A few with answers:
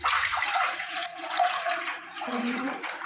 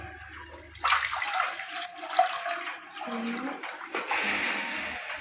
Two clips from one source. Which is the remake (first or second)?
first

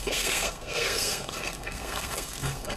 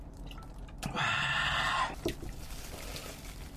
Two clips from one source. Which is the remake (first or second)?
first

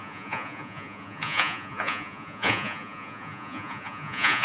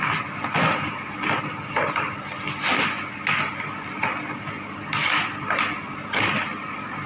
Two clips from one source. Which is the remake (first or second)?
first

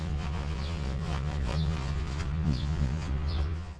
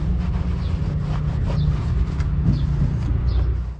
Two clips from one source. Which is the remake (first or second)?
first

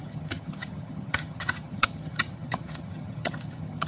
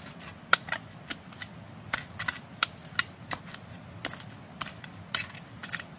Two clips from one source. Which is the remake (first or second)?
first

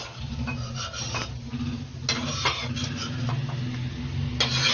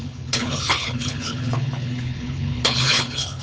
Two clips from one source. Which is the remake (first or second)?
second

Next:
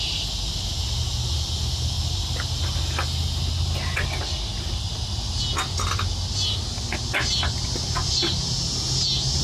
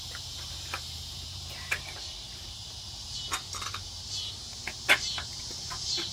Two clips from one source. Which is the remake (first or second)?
second